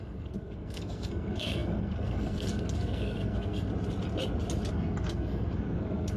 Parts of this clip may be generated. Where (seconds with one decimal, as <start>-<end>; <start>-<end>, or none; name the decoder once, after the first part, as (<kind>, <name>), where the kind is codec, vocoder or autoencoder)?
0.0-3.7 (codec, SNAC); 4.7-6.2